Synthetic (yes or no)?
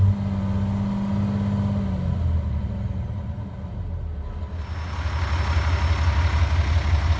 no